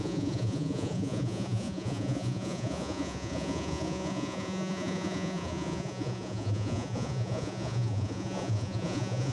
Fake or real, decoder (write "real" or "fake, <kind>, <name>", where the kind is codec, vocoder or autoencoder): fake, vocoder, Vocos